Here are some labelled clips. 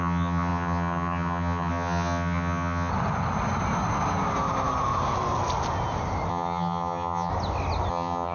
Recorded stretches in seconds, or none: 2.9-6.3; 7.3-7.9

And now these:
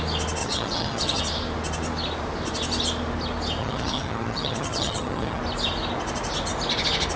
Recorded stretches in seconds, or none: 0.0-0.4; 1.2-3.6; 5.4-7.2

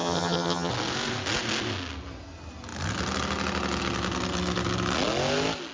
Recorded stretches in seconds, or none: 0.7-5.7

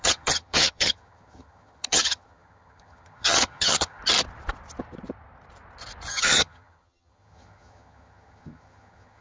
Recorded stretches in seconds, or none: 4.0-6.1

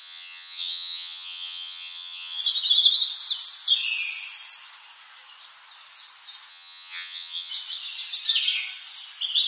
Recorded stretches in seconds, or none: 2.4-6.5; 7.5-9.5

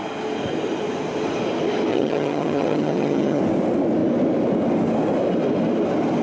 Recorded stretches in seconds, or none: 0.0-1.9; 3.4-6.2

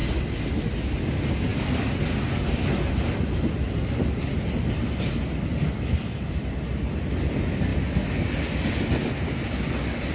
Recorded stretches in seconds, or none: 0.0-10.1

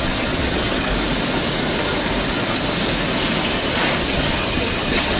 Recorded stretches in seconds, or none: 0.9-4.0